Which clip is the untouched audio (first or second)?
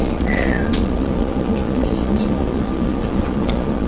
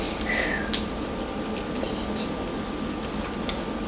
second